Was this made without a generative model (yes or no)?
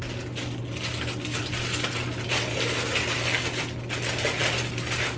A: yes